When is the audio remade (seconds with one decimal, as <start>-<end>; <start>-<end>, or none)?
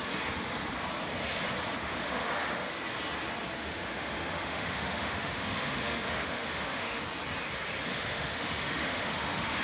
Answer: 1.8-2.7; 3.6-7.0; 7.9-9.6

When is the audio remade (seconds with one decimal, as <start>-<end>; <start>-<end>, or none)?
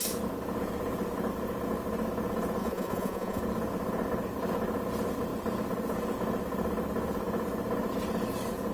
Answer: 2.6-3.4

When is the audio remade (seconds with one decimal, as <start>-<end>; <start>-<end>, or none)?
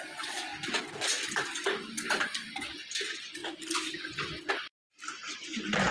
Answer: 0.0-0.5; 1.3-3.4; 4.5-5.9